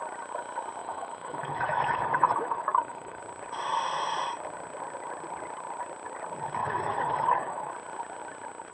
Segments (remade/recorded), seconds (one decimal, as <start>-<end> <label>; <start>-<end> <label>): 0.0-0.8 recorded; 0.8-3.2 remade; 3.2-6.6 recorded; 6.6-7.7 remade; 7.7-8.7 recorded